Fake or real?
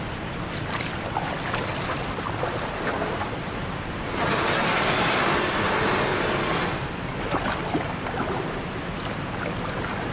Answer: real